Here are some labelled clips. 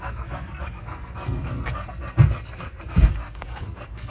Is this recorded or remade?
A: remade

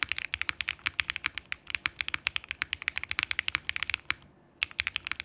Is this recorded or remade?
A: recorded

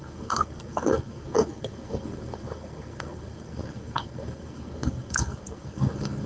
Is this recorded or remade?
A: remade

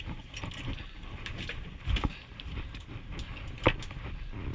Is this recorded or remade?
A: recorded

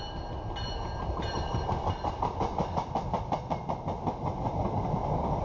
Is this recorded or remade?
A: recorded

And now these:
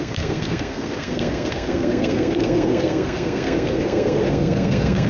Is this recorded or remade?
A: remade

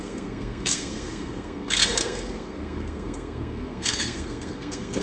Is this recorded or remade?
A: remade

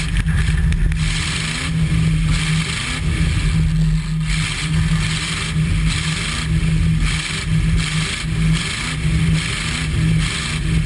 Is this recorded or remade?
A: recorded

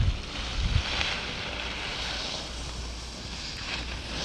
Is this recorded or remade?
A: recorded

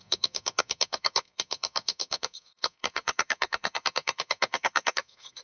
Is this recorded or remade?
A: remade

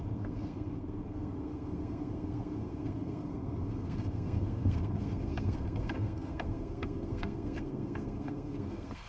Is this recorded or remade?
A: remade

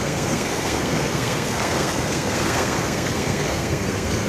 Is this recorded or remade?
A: remade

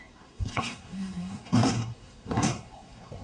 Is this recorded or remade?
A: remade